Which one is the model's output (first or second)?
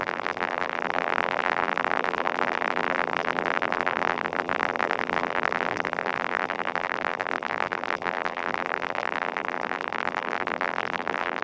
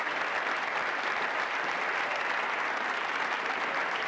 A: first